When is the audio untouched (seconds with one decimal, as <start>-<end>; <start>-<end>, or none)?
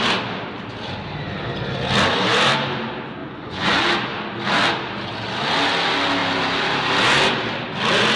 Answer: 0.0-3.2; 3.9-8.2